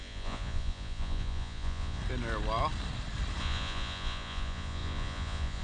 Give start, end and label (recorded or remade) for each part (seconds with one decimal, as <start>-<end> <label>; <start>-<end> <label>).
0.0-2.0 remade; 2.0-3.4 recorded; 3.4-5.6 remade

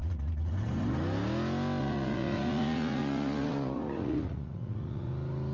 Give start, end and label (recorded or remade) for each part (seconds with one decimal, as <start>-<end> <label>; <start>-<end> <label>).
0.0-0.5 remade; 0.5-1.8 recorded; 1.8-5.1 remade; 5.1-5.5 recorded